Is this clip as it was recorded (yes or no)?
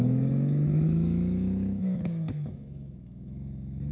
no